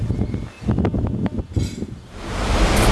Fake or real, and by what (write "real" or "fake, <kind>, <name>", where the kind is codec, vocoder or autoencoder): real